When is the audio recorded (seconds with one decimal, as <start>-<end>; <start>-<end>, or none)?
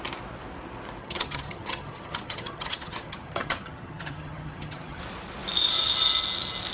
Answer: 0.0-1.0; 5.0-6.7